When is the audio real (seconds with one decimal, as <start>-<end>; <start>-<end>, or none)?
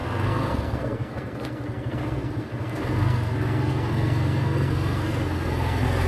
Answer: none